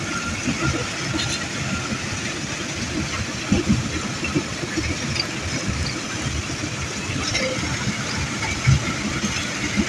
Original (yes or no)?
yes